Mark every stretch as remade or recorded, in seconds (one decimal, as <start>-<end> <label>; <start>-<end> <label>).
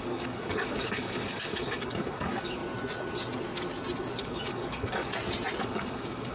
0.0-2.6 remade; 2.6-4.2 recorded; 4.2-5.1 remade; 5.1-5.6 recorded; 5.6-6.3 remade